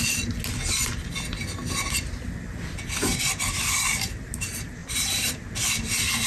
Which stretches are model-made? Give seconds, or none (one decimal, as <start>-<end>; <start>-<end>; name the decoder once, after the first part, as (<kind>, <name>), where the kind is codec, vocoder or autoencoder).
4.8-5.3 (vocoder, BigVGAN v2)